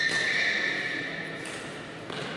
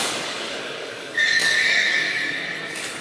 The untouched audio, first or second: first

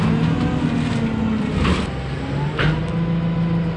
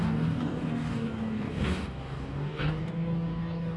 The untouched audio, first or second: first